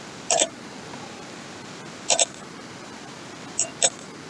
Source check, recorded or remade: recorded